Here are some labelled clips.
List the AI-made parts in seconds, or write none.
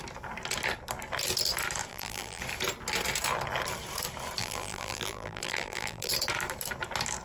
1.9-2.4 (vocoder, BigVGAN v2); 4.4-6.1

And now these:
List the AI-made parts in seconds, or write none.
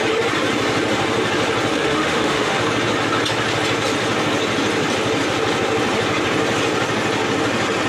1.7-2.6 (autoencoder, DAC-VAE)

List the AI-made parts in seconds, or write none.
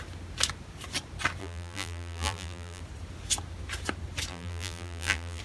1.4-2.8 (vocoder, BigVGAN v2); 4.3-5.4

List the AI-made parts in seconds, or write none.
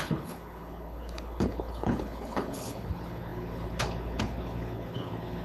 0.0-5.4 (codec, HILCodec)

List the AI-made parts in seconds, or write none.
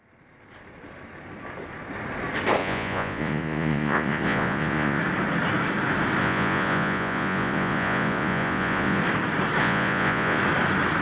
2.6-5.0 (vocoder, Vocos); 6.2-9.0; 9.6-10.4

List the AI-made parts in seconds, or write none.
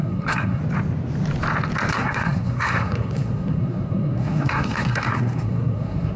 0.0-0.6 (codec, SNAC); 1.9-6.2